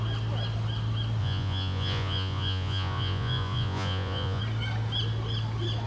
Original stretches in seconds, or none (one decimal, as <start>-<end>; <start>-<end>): 0.0-1.2; 4.4-5.9